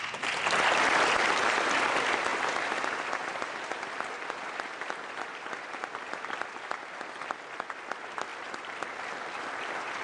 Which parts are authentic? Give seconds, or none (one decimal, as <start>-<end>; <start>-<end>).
0.0-10.0